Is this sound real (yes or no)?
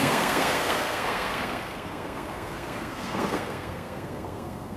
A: no